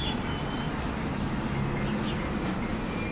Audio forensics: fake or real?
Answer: real